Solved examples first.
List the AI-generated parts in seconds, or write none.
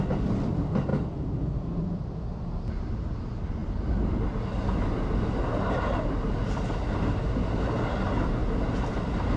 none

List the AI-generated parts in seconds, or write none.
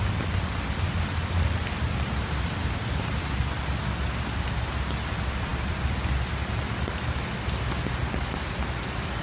2.6-3.3 (vocoder, BigVGAN v2); 5.5-6.3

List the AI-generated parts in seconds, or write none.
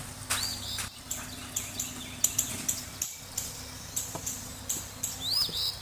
none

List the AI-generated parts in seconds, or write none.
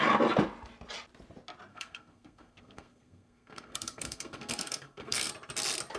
1.7-5.3 (codec, SNAC)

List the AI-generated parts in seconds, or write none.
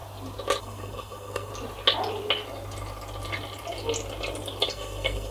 0.6-1.5 (codec, SNAC); 4.7-5.3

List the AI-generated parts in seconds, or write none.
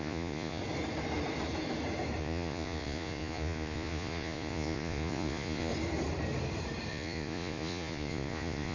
0.0-0.6 (vocoder, Vocos); 2.2-5.7; 6.9-8.7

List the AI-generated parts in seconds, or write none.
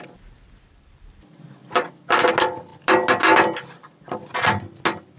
none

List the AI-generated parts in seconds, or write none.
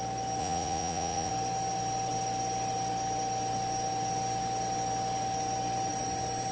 0.4-1.3 (vocoder, Vocos)